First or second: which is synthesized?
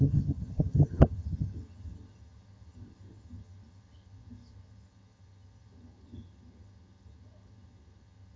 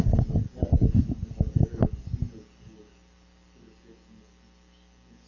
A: first